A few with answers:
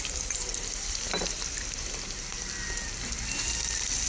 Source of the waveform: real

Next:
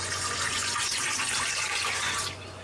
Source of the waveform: fake